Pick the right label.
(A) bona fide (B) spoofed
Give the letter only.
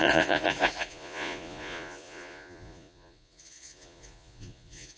B